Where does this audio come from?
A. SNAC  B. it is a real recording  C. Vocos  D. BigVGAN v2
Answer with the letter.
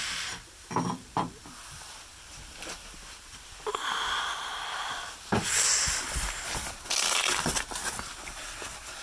B